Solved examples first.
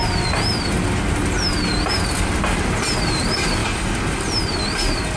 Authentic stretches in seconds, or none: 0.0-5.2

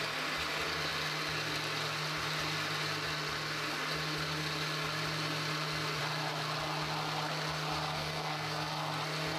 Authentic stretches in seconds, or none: 0.0-7.8; 8.9-9.4

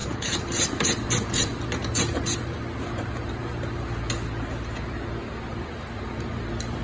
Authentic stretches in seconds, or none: 4.1-5.5